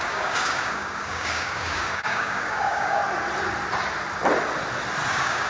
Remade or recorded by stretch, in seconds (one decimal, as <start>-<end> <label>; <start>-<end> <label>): 0.0-3.0 remade; 3.0-5.1 recorded; 5.1-5.5 remade